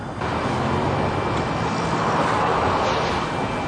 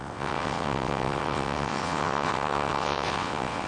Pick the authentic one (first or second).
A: first